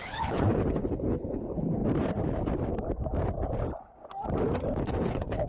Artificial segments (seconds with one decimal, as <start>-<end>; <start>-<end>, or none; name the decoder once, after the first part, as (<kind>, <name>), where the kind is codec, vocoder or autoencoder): 0.0-1.8 (codec, HILCodec); 4.8-5.5